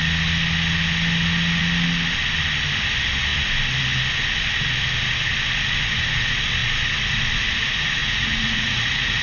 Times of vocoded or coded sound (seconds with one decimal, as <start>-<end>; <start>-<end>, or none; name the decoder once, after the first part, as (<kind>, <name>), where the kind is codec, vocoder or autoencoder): 8.0-9.2 (vocoder, Vocos)